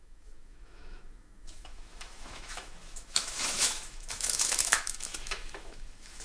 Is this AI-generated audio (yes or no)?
yes